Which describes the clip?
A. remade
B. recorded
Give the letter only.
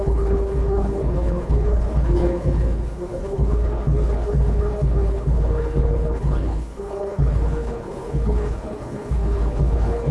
A